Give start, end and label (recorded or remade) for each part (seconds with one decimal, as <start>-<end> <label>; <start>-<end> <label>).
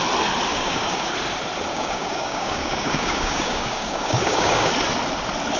0.0-0.5 recorded; 0.5-1.1 remade; 1.1-1.7 recorded; 1.7-4.7 remade; 4.7-5.6 recorded